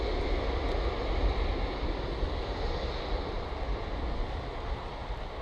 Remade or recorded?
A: recorded